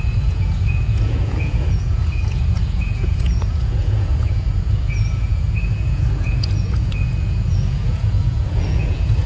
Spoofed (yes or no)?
yes